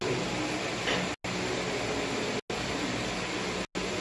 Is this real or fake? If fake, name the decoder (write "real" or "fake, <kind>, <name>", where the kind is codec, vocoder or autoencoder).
real